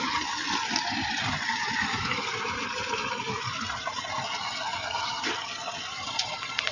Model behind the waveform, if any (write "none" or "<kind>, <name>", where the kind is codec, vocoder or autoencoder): none